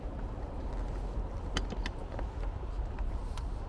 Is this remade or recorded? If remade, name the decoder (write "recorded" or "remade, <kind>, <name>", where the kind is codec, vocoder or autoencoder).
recorded